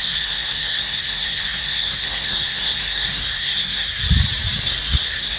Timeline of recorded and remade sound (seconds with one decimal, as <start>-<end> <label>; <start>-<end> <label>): 0.0-4.0 remade; 4.0-4.6 recorded; 4.6-5.4 remade